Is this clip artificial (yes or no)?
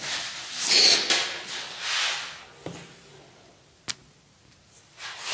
no